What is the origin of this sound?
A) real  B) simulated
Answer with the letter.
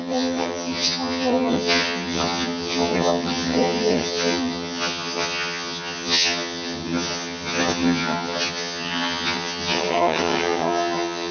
B